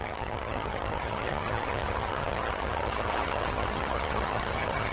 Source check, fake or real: fake